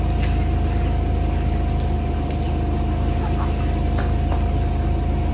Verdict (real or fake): real